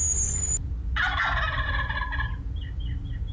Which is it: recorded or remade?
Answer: recorded